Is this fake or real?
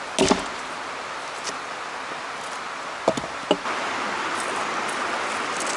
real